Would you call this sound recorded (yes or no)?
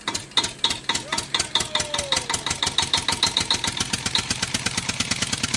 yes